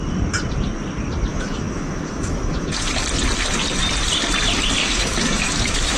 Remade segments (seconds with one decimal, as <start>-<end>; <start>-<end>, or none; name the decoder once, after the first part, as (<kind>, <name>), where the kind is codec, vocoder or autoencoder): 1.3-2.7 (autoencoder, DAC-VAE); 4.8-6.0